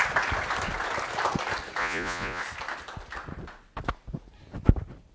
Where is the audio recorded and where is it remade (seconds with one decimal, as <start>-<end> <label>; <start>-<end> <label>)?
0.0-1.8 recorded; 1.8-2.4 remade; 2.4-5.1 recorded

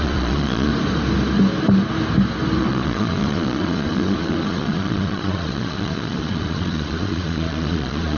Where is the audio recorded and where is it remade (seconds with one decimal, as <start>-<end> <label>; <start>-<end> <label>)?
0.0-0.7 remade; 0.7-2.6 recorded; 2.6-8.2 remade

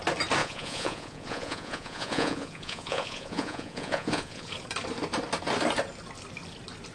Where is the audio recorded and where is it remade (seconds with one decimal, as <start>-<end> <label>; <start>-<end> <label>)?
0.0-0.4 recorded; 0.4-4.5 remade; 4.5-6.9 recorded

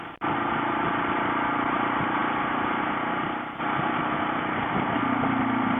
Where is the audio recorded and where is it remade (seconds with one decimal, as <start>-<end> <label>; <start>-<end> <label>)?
0.0-5.8 recorded

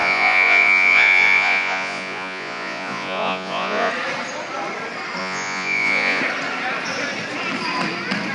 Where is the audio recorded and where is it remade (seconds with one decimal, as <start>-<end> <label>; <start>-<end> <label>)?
0.0-3.9 remade; 3.9-5.2 recorded; 5.2-6.2 remade; 6.2-8.3 recorded

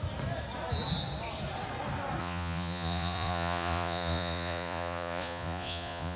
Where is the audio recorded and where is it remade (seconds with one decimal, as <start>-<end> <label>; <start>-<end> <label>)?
0.0-2.2 recorded; 2.2-6.2 remade

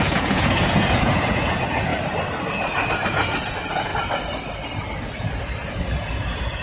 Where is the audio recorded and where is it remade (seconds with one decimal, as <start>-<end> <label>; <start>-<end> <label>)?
0.0-1.9 remade; 1.9-3.0 recorded; 3.0-3.9 remade; 3.9-6.1 recorded; 6.1-6.6 remade